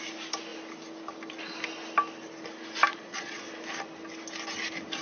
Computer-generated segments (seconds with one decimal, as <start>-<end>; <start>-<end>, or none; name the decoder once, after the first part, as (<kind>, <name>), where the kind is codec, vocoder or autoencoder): 2.9-3.5 (vocoder, Vocos)